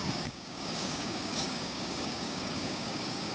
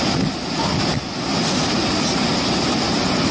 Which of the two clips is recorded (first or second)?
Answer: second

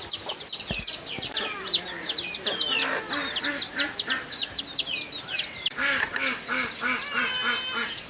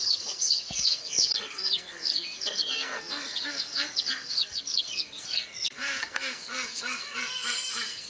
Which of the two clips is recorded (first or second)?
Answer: first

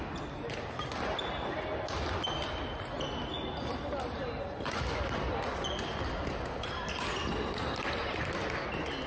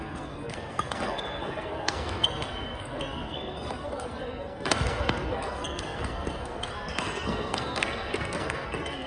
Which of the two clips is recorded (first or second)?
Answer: first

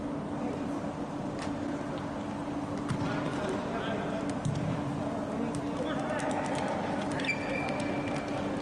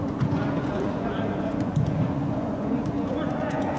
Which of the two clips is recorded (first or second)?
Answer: first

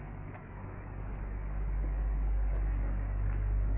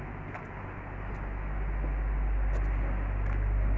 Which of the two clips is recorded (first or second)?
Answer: second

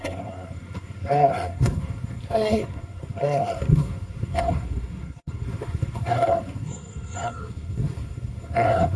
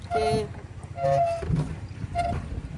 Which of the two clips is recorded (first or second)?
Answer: second